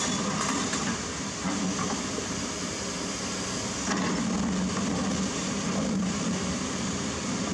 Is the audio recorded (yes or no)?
yes